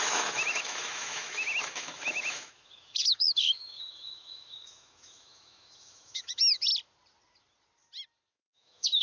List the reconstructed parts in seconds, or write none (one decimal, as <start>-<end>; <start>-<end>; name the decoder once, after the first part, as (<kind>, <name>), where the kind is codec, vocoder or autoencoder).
0.0-6.7 (autoencoder, DAC-VAE); 8.3-9.0